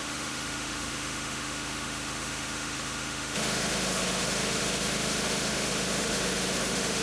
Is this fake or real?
fake